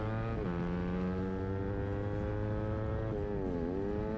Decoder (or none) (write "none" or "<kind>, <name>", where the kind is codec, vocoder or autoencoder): none